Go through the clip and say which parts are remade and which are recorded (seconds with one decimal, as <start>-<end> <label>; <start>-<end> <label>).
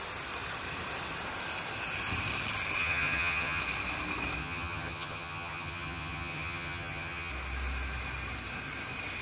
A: 0.0-2.8 recorded; 2.8-3.6 remade; 3.6-4.4 recorded; 4.4-7.3 remade; 7.3-9.2 recorded